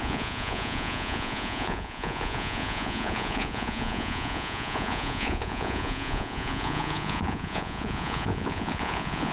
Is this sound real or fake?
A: fake